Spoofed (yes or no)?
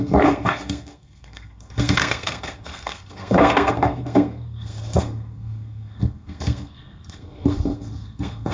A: yes